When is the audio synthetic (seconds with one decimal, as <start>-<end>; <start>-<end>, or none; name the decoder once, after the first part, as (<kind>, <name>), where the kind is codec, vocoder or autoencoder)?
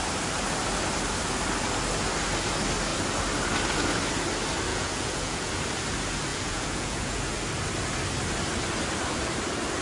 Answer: 4.7-5.5 (vocoder, Vocos); 6.3-7.2